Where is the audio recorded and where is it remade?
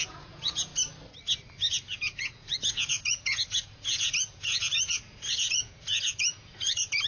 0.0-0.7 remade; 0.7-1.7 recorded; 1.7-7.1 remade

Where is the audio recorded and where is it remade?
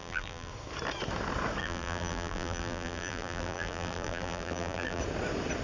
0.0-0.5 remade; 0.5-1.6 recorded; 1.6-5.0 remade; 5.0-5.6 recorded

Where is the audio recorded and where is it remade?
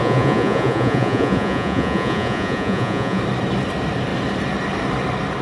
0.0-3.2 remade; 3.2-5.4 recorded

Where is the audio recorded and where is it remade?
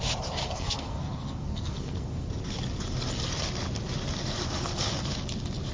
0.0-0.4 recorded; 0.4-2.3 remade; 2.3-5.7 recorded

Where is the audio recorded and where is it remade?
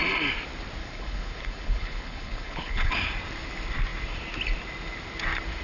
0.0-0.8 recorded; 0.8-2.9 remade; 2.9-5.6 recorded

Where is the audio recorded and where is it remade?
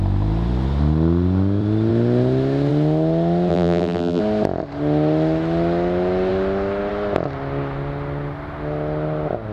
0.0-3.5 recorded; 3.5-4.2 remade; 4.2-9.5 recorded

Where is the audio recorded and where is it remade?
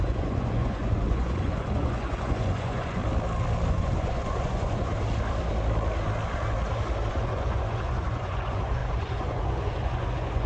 0.0-3.0 remade; 3.0-3.7 recorded; 3.7-4.9 remade; 4.9-7.1 recorded; 7.1-10.5 remade